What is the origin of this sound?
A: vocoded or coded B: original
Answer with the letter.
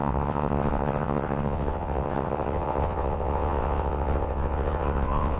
A